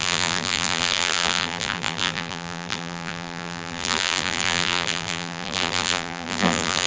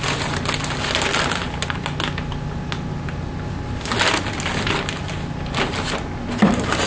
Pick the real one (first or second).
second